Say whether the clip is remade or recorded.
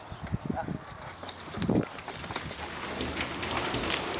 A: recorded